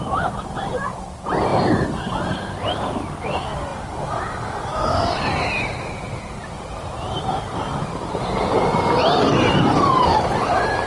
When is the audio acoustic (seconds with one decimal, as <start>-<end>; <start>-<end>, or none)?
0.0-10.9